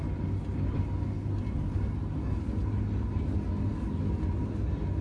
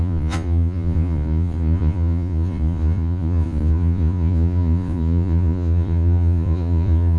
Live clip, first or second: first